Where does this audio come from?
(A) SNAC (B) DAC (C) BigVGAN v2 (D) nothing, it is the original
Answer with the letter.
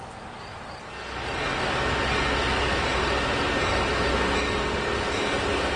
D